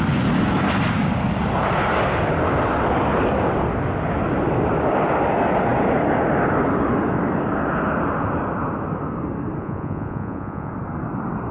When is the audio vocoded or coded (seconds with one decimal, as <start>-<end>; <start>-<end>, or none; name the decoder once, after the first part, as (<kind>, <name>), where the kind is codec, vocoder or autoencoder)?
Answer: 9.6-10.7 (vocoder, Vocos)